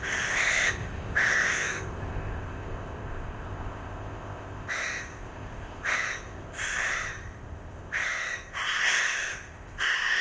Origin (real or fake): fake